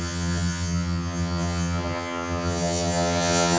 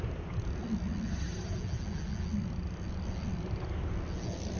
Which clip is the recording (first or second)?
second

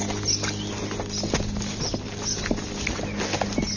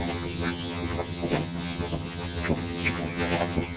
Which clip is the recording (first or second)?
first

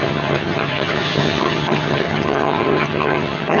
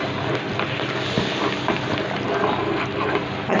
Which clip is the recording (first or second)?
second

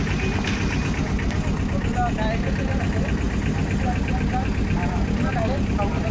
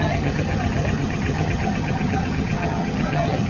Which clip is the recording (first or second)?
first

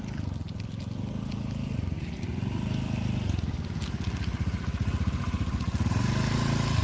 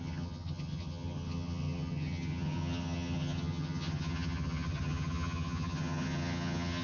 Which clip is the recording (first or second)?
first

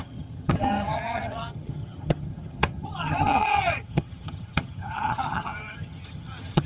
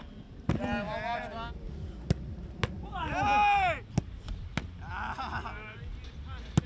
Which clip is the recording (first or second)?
second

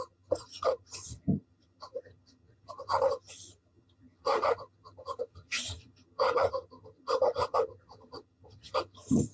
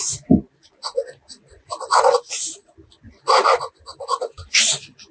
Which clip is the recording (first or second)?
second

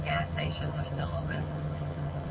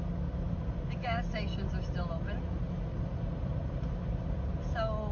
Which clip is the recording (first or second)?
second